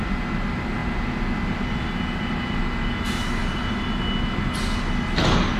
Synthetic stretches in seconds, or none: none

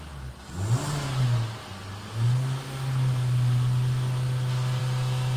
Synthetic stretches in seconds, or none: none

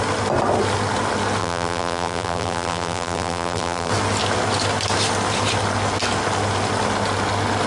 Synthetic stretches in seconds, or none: 1.4-3.9 (vocoder, BigVGAN v2)

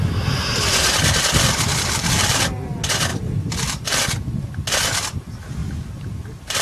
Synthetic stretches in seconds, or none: 1.7-2.5 (vocoder, BigVGAN v2); 3.1-4.0; 5.6-6.6

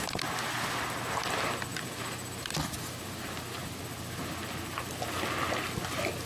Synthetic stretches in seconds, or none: 1.7-3.8 (vocoder, BigVGAN v2)